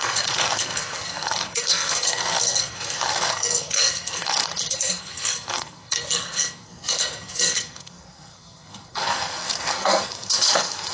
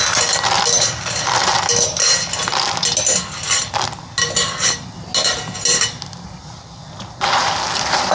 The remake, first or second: first